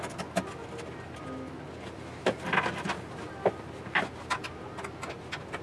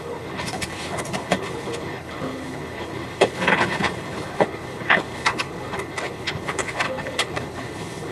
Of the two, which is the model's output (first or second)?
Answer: second